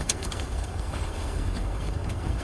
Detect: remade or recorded remade